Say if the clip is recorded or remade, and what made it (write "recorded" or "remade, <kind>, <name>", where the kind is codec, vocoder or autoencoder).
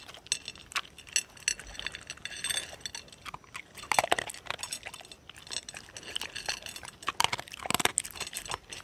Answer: recorded